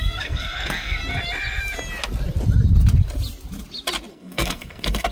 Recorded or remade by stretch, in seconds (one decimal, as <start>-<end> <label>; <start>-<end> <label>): 0.0-1.0 remade; 1.0-4.1 recorded; 4.1-5.1 remade

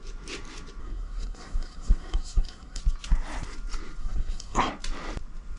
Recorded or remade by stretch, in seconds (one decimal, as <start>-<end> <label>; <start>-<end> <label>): 0.0-0.8 recorded; 0.8-2.8 remade; 2.8-4.0 recorded; 4.0-4.7 remade; 4.7-5.6 recorded

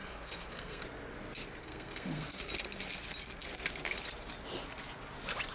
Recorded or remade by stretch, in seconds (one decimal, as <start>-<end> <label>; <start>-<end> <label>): 0.0-0.8 remade; 0.8-1.6 recorded; 1.6-2.5 remade; 2.5-5.5 recorded

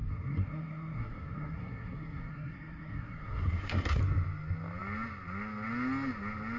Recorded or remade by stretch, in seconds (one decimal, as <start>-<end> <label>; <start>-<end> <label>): 0.0-4.0 remade; 4.0-6.6 recorded

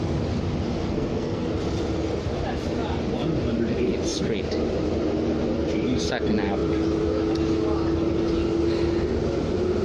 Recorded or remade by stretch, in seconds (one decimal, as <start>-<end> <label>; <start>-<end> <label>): 0.0-0.8 recorded; 0.8-1.5 remade; 1.5-9.8 recorded